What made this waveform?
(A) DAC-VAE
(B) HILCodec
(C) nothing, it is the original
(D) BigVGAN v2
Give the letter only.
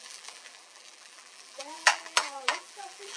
D